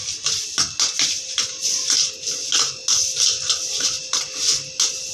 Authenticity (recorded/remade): recorded